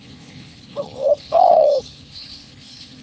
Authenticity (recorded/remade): remade